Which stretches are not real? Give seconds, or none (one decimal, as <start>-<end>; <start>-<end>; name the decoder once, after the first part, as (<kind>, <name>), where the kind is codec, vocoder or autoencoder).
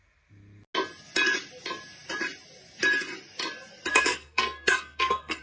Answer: 3.9-5.4 (codec, SNAC)